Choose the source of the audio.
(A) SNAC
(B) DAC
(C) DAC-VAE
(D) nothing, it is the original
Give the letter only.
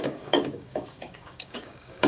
B